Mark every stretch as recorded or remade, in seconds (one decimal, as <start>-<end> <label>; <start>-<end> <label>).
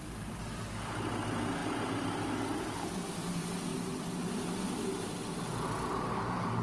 0.0-6.6 recorded